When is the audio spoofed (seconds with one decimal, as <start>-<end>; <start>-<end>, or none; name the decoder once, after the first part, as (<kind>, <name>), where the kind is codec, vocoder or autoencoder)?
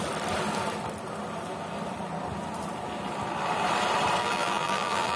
4.2-5.2 (vocoder, BigVGAN v2)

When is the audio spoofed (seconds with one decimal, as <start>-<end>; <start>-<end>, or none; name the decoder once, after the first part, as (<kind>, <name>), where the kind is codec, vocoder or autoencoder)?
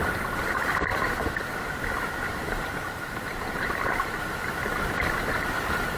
0.9-4.2 (vocoder, BigVGAN v2)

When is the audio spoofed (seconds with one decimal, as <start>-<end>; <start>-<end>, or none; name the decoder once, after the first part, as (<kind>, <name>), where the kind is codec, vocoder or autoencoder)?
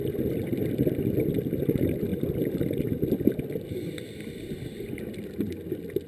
0.5-1.6 (vocoder, BigVGAN v2); 2.1-5.4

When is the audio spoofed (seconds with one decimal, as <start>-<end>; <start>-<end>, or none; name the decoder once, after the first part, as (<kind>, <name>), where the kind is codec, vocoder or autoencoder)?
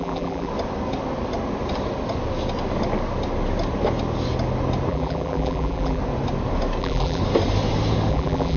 0.0-0.5 (vocoder, BigVGAN v2); 4.9-6.0; 6.8-7.2; 8.1-8.6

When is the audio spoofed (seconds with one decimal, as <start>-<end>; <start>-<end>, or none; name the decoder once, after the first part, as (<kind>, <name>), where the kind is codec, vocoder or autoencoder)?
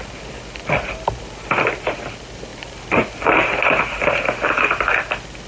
2.5-3.8 (vocoder, BigVGAN v2)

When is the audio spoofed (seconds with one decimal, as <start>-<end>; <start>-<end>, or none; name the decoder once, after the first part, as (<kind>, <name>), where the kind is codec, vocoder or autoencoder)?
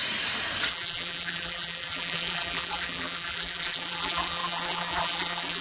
0.7-5.6 (vocoder, BigVGAN v2)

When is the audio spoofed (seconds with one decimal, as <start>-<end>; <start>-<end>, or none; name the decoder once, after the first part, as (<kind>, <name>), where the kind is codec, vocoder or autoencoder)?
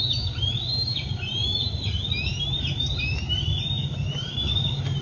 none